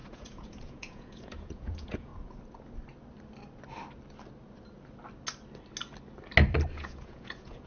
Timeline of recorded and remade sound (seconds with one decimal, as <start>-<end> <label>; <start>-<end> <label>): 0.0-2.1 remade; 2.1-6.7 recorded; 6.7-7.7 remade